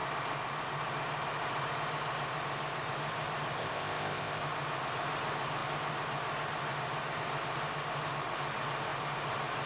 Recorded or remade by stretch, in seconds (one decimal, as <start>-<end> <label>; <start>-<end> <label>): 0.0-3.6 recorded; 3.6-4.4 remade; 4.4-9.7 recorded